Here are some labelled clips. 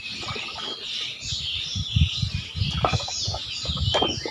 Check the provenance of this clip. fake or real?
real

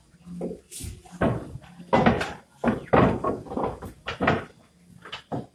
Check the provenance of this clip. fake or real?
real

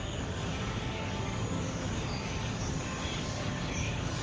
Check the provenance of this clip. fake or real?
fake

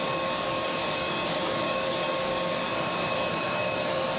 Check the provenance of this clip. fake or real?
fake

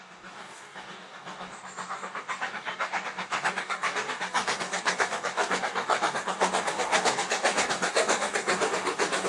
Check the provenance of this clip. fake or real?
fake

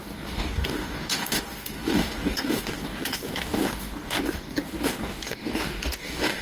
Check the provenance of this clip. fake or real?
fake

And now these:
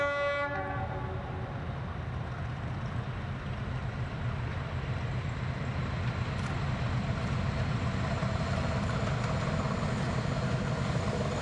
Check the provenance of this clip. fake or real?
real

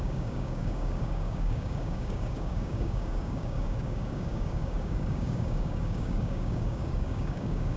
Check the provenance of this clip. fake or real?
fake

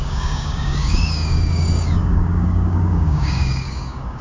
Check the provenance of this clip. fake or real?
fake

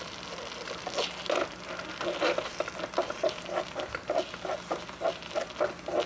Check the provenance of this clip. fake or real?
real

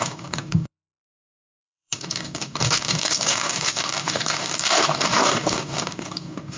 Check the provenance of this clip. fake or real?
fake